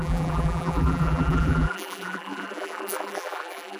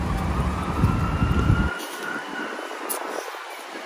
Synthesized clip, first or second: first